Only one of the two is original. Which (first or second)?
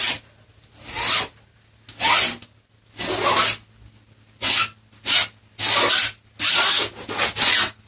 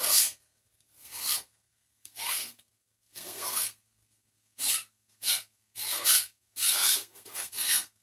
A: first